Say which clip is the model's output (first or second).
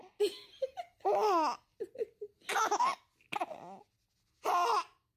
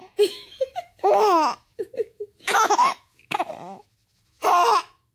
second